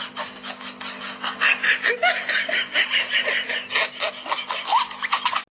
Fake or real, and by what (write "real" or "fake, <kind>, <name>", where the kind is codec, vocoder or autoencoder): real